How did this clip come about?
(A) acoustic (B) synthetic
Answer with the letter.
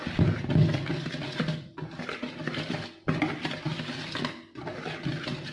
A